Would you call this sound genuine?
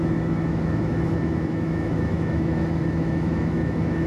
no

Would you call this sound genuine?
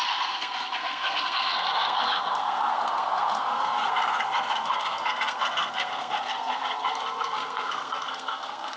no